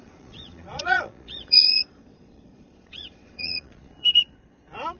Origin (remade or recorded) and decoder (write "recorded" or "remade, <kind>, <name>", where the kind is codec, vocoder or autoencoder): remade, vocoder, Vocos